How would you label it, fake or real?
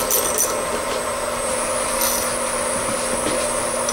real